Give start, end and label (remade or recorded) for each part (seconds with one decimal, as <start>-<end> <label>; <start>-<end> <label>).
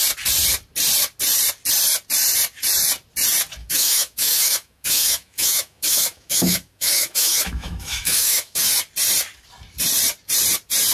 0.0-3.6 recorded; 3.6-8.6 remade; 8.6-10.9 recorded